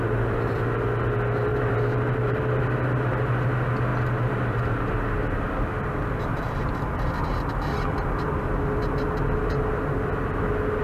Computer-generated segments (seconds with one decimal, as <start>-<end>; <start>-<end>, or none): 1.5-2.4; 6.3-6.9